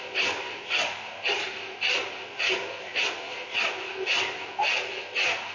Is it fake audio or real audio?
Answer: real